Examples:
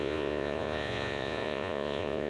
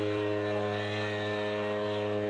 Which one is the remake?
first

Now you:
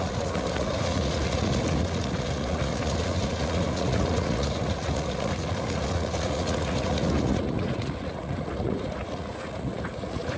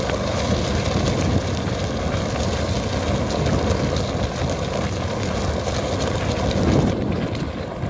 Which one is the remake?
first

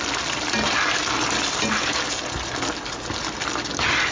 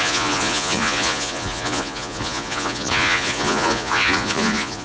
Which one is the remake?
second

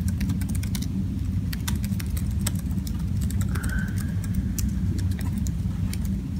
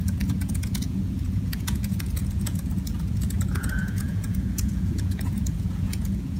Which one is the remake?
second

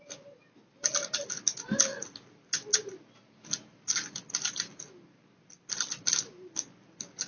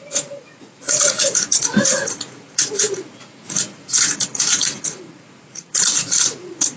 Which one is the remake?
second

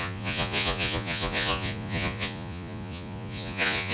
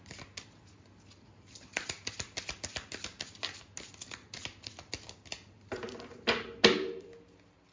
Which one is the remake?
first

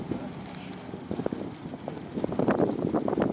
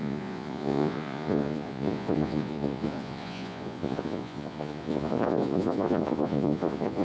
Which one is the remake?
second